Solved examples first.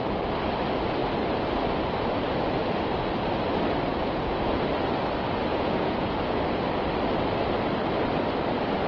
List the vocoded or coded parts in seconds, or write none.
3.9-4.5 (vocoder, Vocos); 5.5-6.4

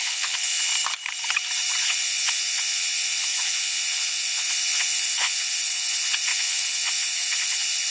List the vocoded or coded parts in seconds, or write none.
0.0-0.7 (vocoder, Vocos); 1.8-7.9

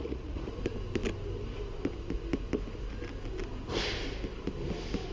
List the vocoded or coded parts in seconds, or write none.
0.0-0.6 (vocoder, Vocos)

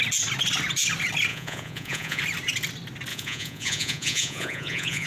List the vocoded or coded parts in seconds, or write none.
1.3-2.2 (vocoder, Vocos); 3.1-5.1

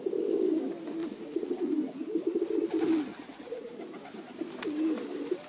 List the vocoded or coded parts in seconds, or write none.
1.0-1.7 (vocoder, Vocos); 3.1-3.7

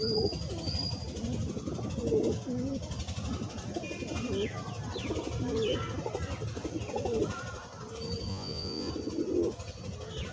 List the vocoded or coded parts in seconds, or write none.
8.3-8.9 (vocoder, Vocos)

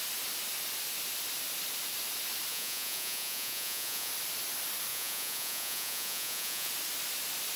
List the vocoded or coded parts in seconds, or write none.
2.5-4.1 (vocoder, Vocos); 4.9-6.7